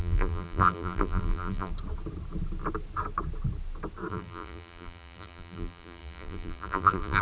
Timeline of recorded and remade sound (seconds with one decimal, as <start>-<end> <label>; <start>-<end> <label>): 0.0-1.7 remade; 1.7-4.1 recorded; 4.1-7.2 remade